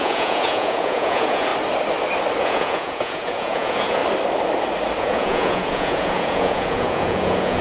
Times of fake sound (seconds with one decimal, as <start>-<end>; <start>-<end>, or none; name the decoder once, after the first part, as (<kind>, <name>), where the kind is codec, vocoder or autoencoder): 0.0-1.5 (vocoder, Vocos); 2.4-4.0; 5.0-7.6